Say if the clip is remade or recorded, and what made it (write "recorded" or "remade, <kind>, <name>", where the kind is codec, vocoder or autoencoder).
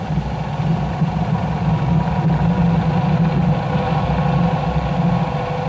recorded